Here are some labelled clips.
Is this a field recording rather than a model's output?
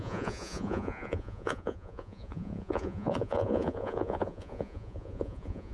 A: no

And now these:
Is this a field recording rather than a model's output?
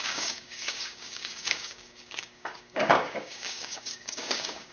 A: no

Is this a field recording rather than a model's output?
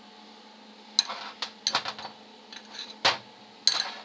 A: yes